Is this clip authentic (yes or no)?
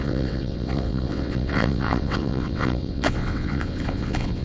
no